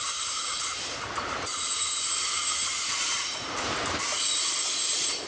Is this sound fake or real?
fake